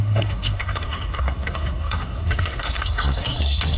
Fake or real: fake